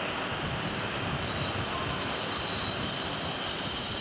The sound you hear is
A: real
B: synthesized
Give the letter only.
A